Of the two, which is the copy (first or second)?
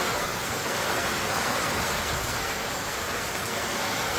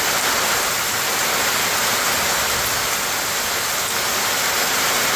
first